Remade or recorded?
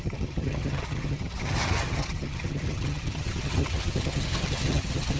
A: remade